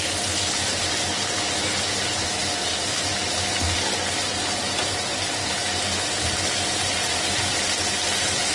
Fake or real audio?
real